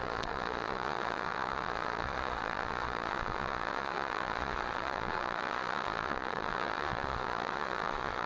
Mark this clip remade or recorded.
remade